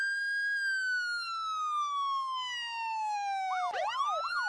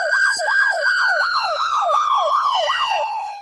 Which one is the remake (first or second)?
second